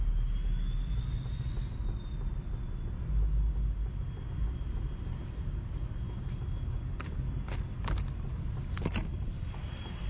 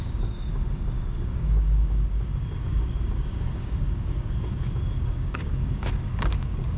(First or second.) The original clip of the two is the first